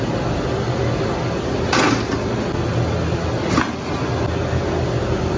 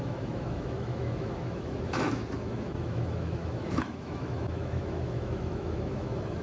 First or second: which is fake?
second